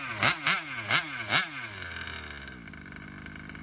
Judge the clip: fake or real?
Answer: real